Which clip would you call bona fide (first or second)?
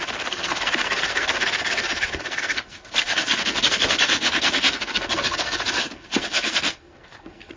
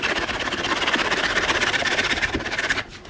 second